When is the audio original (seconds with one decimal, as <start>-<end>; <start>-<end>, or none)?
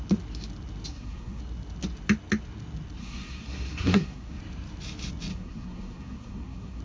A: 0.0-0.9; 1.4-3.0; 4.4-5.3